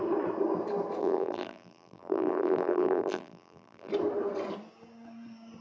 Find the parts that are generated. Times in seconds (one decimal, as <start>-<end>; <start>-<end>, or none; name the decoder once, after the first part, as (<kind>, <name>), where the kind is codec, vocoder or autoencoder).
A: 1.0-3.9 (vocoder, BigVGAN v2)